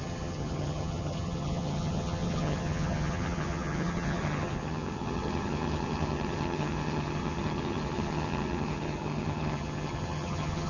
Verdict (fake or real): fake